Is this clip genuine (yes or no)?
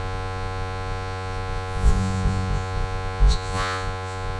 no